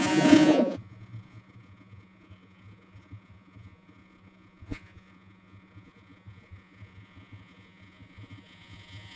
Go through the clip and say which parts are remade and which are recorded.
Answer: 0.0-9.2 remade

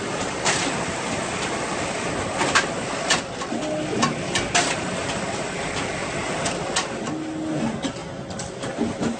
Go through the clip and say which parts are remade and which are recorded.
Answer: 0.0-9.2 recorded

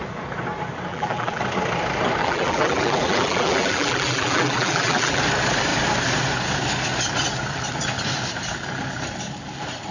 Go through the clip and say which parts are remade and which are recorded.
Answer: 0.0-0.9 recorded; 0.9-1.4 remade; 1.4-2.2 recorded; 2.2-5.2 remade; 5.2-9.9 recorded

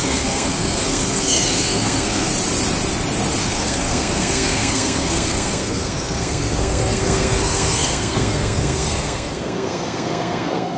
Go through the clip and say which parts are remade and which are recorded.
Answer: 0.0-2.3 remade; 2.3-3.4 recorded; 3.4-10.8 remade

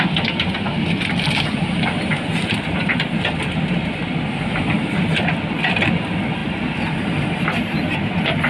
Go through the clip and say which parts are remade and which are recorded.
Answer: 0.0-8.5 recorded

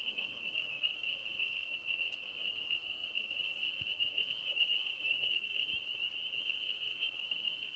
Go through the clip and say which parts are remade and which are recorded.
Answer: 0.0-5.7 remade; 5.7-6.4 recorded; 6.4-7.8 remade

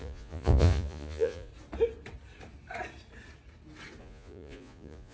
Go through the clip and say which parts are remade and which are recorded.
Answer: 0.0-1.5 remade; 1.5-4.0 recorded; 4.0-5.1 remade